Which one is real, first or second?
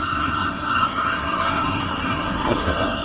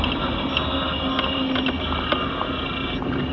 second